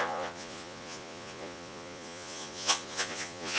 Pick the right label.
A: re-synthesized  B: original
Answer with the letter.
A